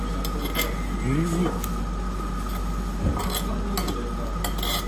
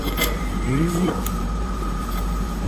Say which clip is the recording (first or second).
first